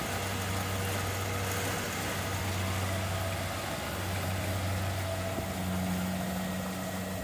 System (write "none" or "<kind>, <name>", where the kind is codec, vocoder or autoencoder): none